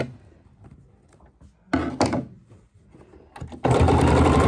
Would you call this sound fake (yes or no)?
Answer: no